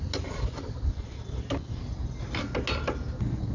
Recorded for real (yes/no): yes